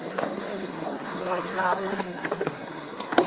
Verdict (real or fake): fake